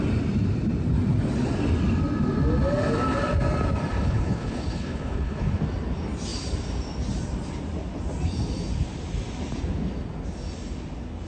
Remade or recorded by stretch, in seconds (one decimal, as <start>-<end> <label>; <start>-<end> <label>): 0.0-3.9 recorded; 3.9-5.6 remade; 5.6-11.3 recorded